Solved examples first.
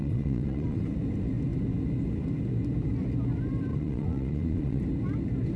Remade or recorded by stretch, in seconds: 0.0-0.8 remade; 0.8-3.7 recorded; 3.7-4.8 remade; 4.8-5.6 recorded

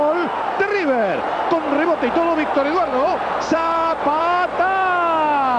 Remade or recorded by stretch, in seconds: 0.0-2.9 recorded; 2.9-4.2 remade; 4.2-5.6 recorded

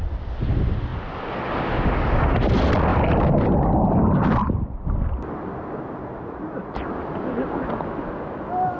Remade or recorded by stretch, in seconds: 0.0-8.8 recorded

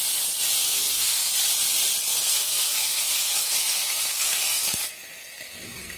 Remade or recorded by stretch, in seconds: 0.0-0.6 recorded; 0.6-1.3 remade; 1.3-2.1 recorded; 2.1-6.0 remade

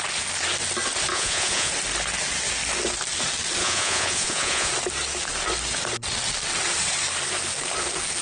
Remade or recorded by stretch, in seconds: 0.0-1.1 recorded; 1.1-1.7 remade; 1.7-3.6 recorded; 3.6-4.7 remade; 4.7-8.2 recorded